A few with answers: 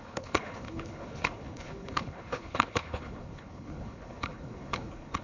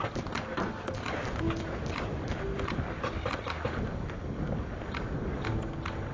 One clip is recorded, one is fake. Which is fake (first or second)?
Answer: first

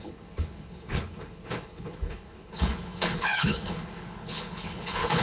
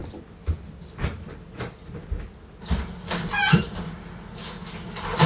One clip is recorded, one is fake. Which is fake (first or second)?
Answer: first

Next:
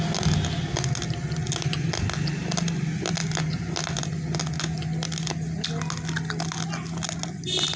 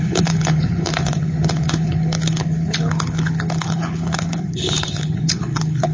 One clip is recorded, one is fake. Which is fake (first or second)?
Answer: second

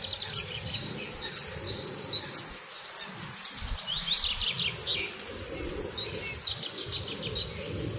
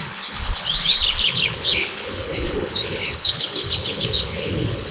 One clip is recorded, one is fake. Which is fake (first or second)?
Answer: second